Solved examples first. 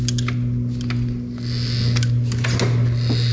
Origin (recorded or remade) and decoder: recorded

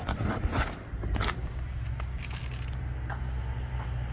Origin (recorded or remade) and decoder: recorded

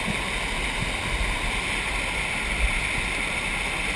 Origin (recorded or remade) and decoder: recorded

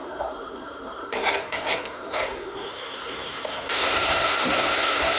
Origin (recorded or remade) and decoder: remade, codec, SNAC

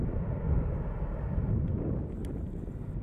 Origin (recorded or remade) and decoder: recorded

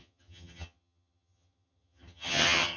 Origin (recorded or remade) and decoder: remade, vocoder, HiFi-GAN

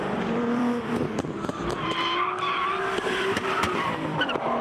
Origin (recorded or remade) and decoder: remade, vocoder, BigVGAN v2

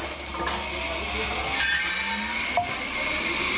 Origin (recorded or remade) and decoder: recorded